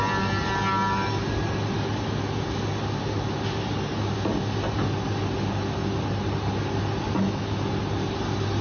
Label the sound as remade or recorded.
recorded